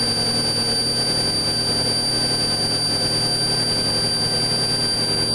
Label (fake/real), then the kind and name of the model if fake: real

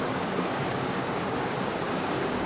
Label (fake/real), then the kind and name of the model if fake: fake, codec, DAC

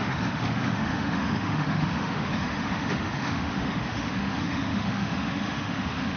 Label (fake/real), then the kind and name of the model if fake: fake, autoencoder, DAC-VAE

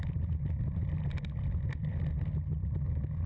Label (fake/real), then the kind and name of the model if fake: real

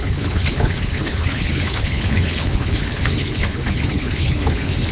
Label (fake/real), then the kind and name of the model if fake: fake, codec, HILCodec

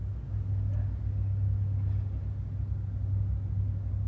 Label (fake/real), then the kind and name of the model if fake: real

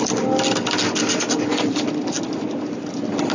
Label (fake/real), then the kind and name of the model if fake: real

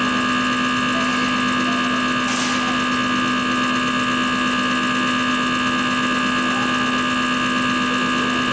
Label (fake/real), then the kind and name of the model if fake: real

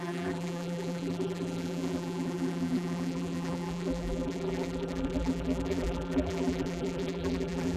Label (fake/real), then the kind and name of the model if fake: fake, vocoder, BigVGAN v2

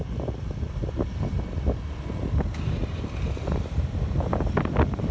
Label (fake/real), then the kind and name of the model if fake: real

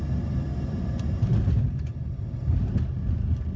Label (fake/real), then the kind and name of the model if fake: real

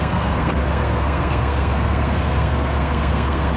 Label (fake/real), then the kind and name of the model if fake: fake, codec, SNAC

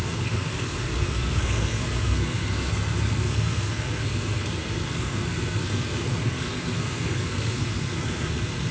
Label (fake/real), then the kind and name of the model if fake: fake, codec, SNAC